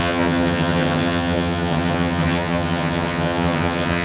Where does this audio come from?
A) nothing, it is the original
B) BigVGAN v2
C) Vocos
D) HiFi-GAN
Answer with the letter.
D